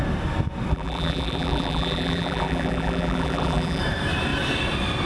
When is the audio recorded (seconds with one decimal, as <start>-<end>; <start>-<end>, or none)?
0.0-0.7; 3.8-5.1